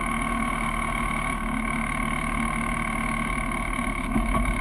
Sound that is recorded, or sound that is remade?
remade